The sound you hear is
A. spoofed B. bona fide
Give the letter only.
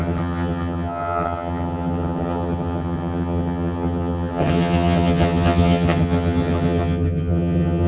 A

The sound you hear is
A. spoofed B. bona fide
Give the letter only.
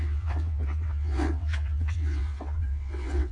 A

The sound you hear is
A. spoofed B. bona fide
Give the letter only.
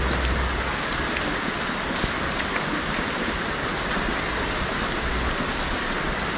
B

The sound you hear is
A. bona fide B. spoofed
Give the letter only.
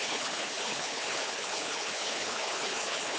B